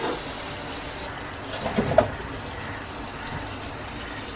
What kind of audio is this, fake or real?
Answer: real